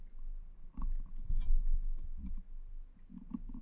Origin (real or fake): real